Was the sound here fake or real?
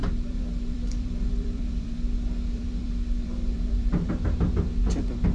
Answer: fake